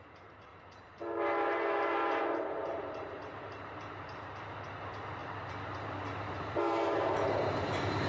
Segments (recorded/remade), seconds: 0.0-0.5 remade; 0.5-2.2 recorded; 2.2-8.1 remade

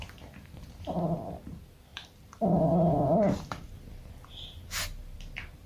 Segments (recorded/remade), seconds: 0.0-1.9 recorded; 1.9-5.2 remade; 5.2-5.7 recorded

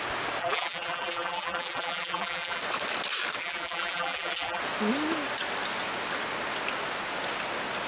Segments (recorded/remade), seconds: 0.0-0.4 recorded; 0.4-2.6 remade; 2.6-3.4 recorded; 3.4-4.6 remade; 4.6-7.9 recorded

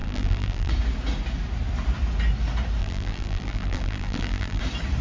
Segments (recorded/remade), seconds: 0.0-0.7 remade; 0.7-2.8 recorded; 2.8-4.6 remade; 4.6-5.0 recorded